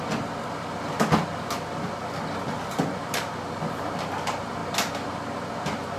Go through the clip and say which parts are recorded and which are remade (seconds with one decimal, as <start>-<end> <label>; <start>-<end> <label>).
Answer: 0.0-6.0 recorded